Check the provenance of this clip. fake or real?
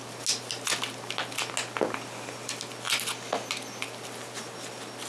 real